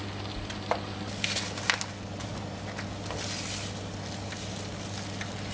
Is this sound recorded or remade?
recorded